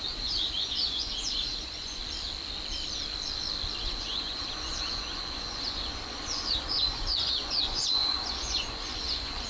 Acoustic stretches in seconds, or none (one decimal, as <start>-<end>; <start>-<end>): 2.0-3.8